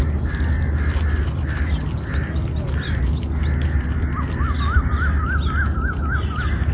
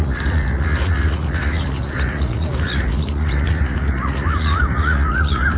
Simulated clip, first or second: second